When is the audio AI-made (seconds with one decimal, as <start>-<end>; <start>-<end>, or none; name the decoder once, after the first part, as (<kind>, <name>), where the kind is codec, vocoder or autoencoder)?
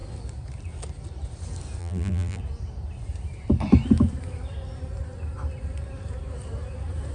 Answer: 1.8-2.4 (vocoder, BigVGAN v2)